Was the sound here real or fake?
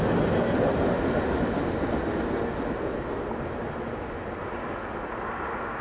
real